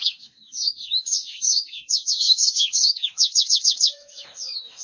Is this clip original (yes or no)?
no